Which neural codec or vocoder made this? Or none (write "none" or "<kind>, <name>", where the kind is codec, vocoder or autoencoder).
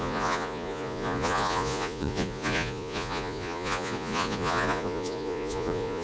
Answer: vocoder, Vocos